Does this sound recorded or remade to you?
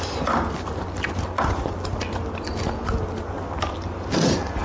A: recorded